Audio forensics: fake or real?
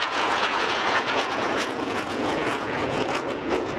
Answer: fake